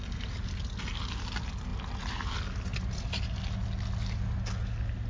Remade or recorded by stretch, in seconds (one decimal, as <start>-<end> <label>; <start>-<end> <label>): 0.0-5.1 recorded